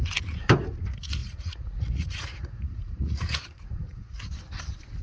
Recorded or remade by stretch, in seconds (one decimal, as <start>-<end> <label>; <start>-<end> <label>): 0.0-1.2 recorded; 1.2-4.2 remade; 4.2-5.0 recorded

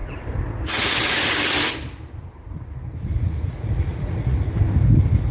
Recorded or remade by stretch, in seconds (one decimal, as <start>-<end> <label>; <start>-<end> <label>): 0.0-0.8 remade; 0.8-2.9 recorded; 2.9-4.5 remade; 4.5-5.3 recorded